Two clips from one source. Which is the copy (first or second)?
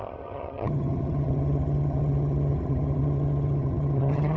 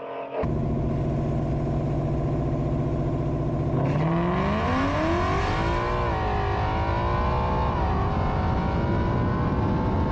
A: first